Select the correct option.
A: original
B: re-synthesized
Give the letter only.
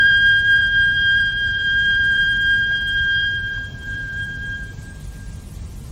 B